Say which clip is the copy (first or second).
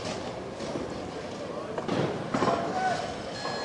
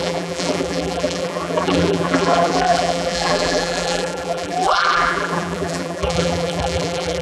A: second